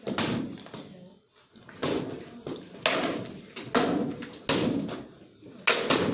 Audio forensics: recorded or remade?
recorded